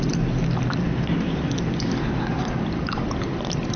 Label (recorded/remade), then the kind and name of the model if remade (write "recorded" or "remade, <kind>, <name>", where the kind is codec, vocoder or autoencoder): recorded